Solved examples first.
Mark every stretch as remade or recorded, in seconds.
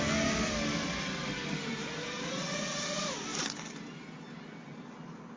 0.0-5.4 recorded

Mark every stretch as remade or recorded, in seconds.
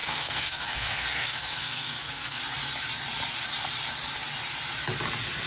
0.0-2.4 remade; 2.4-5.5 recorded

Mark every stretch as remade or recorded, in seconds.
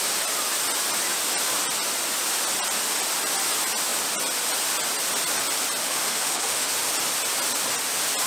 0.0-5.8 recorded; 5.8-6.7 remade; 6.7-8.3 recorded